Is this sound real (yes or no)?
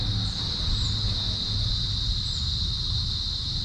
yes